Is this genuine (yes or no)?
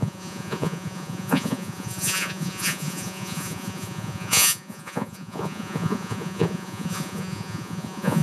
no